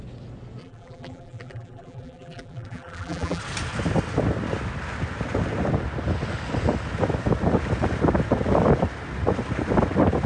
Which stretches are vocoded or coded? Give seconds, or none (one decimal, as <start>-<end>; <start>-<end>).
0.6-3.4